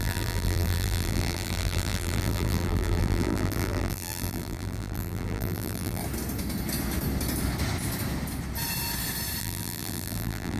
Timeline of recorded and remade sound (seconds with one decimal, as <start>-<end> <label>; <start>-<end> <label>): 0.0-6.0 remade; 6.0-9.4 recorded; 9.4-10.6 remade